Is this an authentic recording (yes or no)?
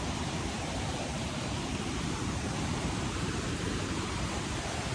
no